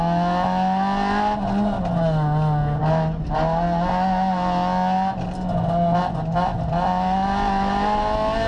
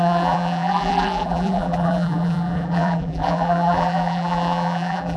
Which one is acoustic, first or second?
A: first